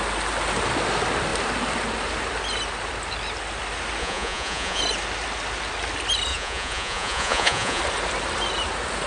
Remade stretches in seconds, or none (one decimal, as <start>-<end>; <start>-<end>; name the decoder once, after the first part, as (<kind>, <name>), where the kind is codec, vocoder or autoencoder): 4.0-4.8 (vocoder, Vocos); 6.3-7.8